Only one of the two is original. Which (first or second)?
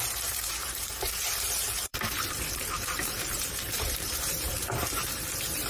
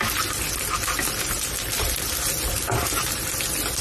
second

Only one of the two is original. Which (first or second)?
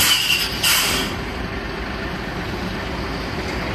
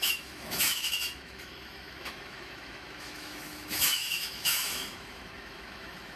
first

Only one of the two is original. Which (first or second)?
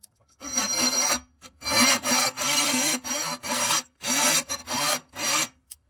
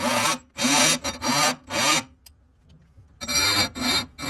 second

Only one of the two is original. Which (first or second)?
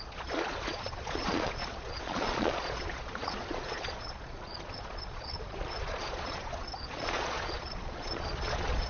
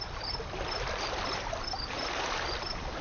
second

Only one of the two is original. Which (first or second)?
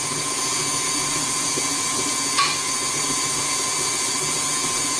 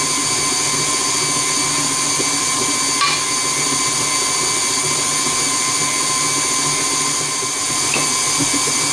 second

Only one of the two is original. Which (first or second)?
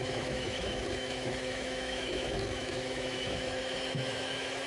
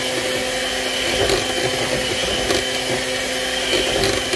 second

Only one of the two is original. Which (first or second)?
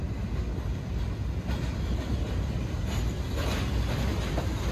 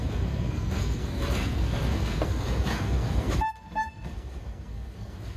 first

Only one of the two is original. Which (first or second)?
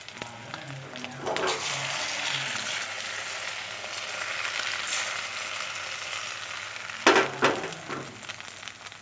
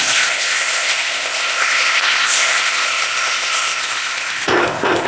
first